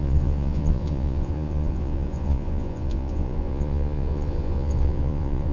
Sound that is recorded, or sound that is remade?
remade